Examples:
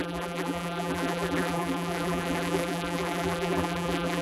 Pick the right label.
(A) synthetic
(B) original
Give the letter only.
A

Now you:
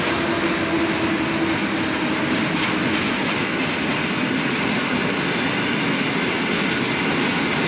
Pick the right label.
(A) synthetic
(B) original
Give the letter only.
B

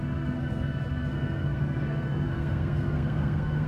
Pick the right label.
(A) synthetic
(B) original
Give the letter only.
A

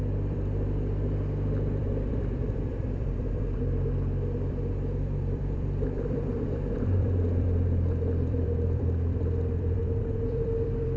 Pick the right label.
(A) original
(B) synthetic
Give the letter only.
B